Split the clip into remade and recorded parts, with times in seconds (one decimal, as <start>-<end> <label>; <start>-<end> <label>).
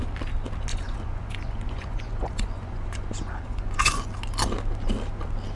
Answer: 0.0-0.7 recorded; 0.7-4.1 remade; 4.1-5.6 recorded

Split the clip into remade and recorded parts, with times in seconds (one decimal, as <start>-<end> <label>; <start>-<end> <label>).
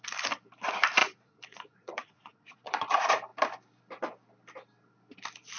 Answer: 0.0-1.0 recorded; 1.0-2.9 remade; 2.9-5.6 recorded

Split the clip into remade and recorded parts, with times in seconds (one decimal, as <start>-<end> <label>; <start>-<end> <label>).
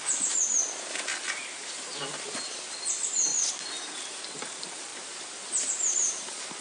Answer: 0.0-3.3 remade; 3.3-4.4 recorded; 4.4-6.6 remade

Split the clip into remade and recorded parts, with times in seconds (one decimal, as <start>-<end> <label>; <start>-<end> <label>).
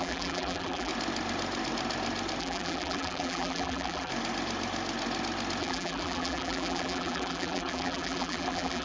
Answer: 0.0-0.9 remade; 0.9-2.4 recorded; 2.4-4.1 remade; 4.1-5.6 recorded; 5.6-8.8 remade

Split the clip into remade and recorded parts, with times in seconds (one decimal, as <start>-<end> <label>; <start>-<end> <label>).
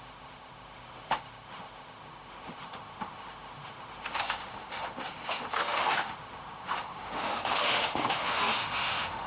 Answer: 0.0-9.3 remade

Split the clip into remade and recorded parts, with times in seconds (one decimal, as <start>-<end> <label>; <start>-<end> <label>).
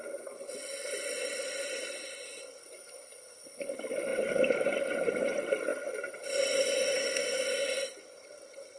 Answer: 0.0-8.8 recorded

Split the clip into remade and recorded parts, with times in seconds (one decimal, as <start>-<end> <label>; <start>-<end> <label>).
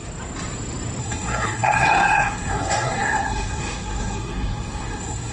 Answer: 0.0-1.0 recorded; 1.0-5.3 remade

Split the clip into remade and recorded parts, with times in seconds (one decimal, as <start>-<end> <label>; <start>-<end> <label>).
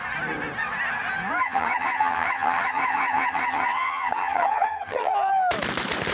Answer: 0.0-1.4 recorded; 1.4-5.1 remade; 5.1-6.1 recorded